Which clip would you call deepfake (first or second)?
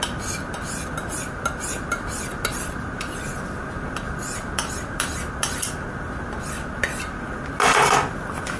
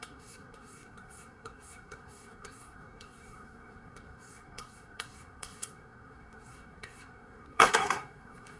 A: second